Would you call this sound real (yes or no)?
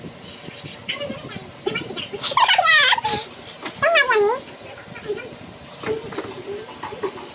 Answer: yes